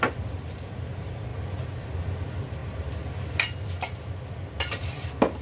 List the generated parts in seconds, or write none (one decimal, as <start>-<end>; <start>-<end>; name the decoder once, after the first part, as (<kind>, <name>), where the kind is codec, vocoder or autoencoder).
0.0-1.3 (vocoder, BigVGAN v2); 1.8-5.4